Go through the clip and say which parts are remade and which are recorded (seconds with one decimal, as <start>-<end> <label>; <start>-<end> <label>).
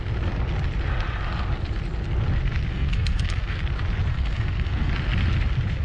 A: 0.0-2.7 recorded; 2.7-3.6 remade; 3.6-4.1 recorded; 4.1-4.9 remade; 4.9-5.8 recorded